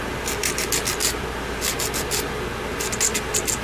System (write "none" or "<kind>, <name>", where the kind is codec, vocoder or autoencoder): none